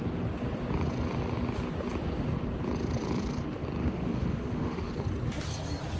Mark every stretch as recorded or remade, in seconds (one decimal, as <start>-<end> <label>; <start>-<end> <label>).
0.0-3.8 recorded; 3.8-4.9 remade; 4.9-6.0 recorded